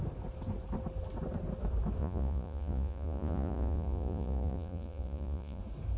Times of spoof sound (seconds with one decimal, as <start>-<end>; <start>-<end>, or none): 2.0-5.6